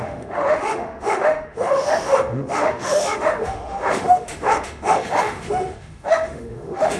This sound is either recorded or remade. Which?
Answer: remade